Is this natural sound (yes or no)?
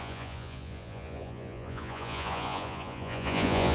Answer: no